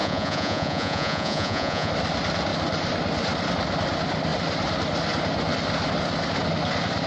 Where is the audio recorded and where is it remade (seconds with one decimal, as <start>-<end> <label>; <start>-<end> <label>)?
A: 0.0-1.9 remade; 1.9-7.1 recorded